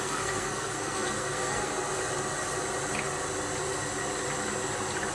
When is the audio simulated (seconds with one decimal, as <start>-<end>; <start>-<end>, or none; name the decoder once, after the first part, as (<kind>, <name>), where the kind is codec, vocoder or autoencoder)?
0.0-1.7 (codec, SNAC)